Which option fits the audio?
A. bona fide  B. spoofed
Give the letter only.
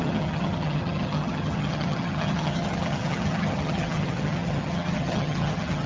B